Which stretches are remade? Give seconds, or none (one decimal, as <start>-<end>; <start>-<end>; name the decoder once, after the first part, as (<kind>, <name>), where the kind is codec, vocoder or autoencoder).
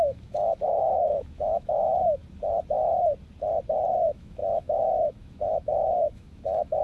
0.0-2.2 (autoencoder, DAC-VAE); 3.9-6.8